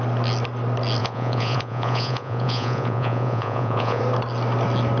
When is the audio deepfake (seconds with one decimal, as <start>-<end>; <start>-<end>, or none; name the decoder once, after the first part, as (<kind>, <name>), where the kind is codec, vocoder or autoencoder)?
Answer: 1.0-4.0 (vocoder, Vocos)